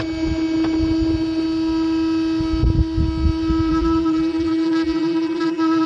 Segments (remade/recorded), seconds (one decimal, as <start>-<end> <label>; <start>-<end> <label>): 0.0-3.7 recorded; 3.7-5.9 remade